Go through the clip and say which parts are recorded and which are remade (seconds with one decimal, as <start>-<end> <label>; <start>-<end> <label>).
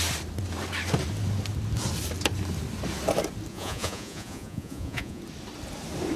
0.0-3.5 recorded; 3.5-5.2 remade; 5.2-6.2 recorded